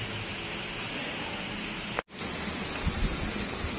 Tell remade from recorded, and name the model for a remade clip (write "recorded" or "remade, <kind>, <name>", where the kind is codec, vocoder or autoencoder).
recorded